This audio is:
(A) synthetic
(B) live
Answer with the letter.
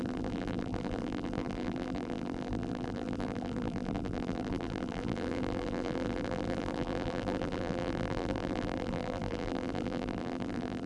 A